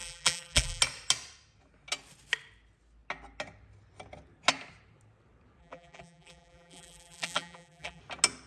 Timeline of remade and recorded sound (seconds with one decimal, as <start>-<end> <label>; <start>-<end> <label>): 0.0-0.8 remade; 0.8-5.6 recorded; 5.6-8.0 remade; 8.0-8.5 recorded